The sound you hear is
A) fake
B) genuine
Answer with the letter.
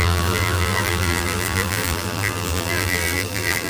A